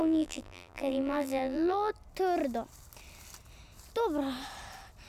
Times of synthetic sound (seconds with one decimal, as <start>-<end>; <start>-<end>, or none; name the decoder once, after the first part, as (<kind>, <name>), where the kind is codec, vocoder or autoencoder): 0.0-1.9 (vocoder, BigVGAN v2)